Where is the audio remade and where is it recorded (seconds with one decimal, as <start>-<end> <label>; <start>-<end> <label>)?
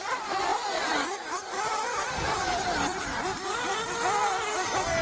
0.0-0.5 recorded; 0.5-2.4 remade; 2.4-2.9 recorded; 2.9-4.2 remade; 4.2-5.0 recorded